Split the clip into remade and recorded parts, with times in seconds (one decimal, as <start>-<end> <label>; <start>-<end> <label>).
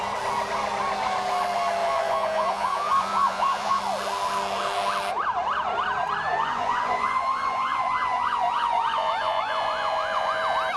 0.0-1.8 recorded; 1.8-3.8 remade; 3.8-6.3 recorded; 6.3-10.4 remade; 10.4-10.8 recorded